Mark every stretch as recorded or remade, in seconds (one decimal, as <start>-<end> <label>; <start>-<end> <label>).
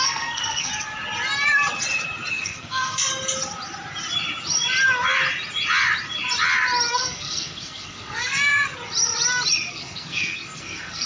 0.0-0.7 remade; 0.7-2.3 recorded; 2.3-3.1 remade; 3.1-6.9 recorded; 6.9-8.7 remade; 8.7-9.7 recorded; 9.7-11.1 remade